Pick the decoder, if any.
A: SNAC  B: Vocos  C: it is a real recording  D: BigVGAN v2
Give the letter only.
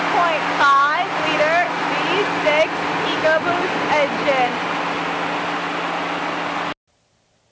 C